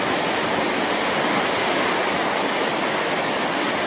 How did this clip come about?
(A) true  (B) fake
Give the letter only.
A